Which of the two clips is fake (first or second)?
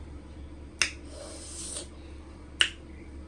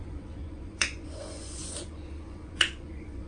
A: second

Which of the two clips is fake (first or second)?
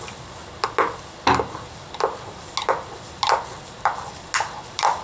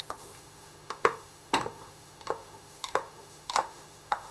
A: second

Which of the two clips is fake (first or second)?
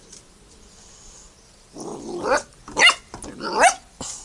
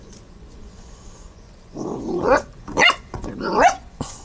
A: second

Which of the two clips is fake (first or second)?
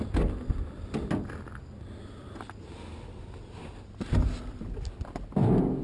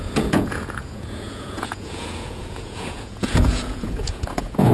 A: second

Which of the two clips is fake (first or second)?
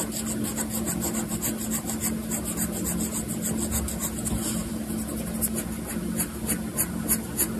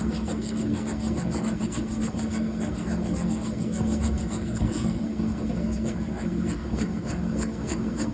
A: second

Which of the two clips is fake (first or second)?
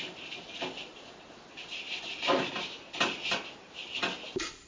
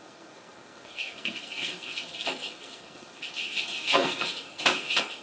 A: second